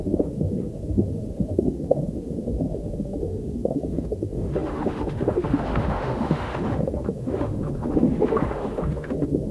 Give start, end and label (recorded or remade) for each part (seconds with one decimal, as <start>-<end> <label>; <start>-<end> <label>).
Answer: 0.0-9.5 remade